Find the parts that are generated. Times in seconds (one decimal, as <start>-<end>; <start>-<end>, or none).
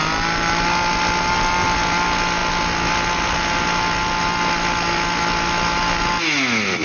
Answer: none